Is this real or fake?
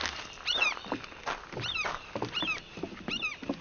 real